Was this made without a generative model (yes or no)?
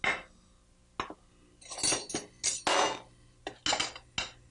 yes